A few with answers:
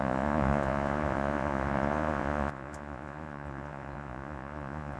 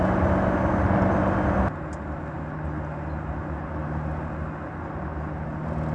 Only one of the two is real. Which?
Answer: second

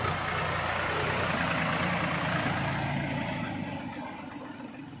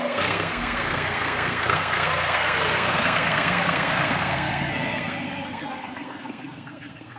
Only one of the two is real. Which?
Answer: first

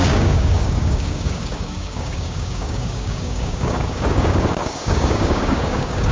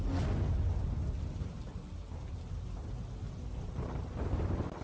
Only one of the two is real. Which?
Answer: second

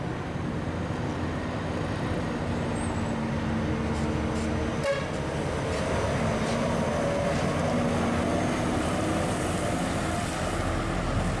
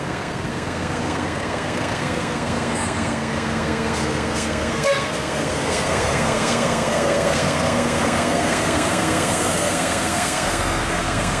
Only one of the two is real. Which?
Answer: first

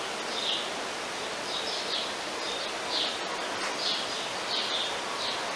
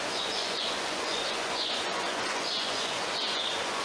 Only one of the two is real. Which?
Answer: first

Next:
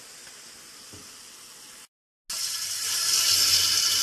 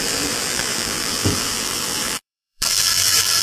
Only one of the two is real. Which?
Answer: first